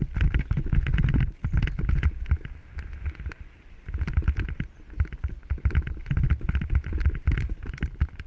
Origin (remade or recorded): recorded